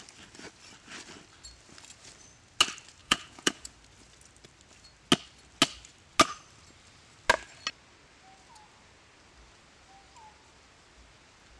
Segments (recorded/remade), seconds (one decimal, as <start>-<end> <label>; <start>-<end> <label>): 0.0-3.0 recorded; 3.0-3.7 remade; 3.7-11.6 recorded